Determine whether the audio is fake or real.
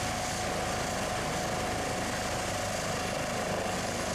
real